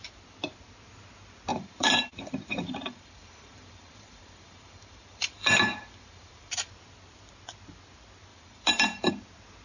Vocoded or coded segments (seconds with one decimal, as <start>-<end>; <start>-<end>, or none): 1.5-6.7; 8.3-9.1